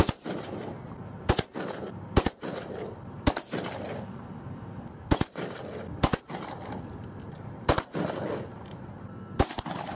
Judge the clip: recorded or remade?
recorded